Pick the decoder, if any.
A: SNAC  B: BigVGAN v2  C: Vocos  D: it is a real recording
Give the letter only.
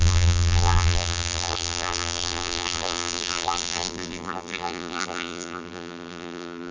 B